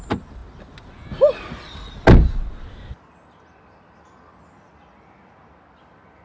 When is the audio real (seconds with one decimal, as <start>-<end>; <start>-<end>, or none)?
0.0-6.2